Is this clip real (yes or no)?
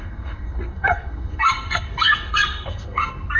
no